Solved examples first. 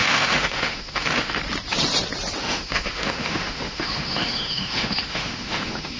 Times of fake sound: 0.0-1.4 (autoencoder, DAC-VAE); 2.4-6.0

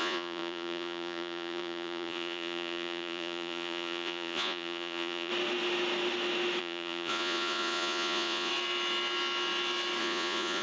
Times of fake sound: 0.0-5.3 (vocoder, Vocos); 6.6-8.5; 10.0-10.6